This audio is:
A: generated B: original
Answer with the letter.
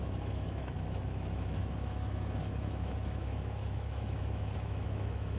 A